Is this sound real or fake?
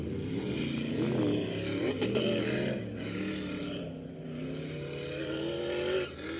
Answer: real